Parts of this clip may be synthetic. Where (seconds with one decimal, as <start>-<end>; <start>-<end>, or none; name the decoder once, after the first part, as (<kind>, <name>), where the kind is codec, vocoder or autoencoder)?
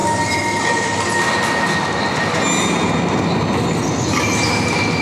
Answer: none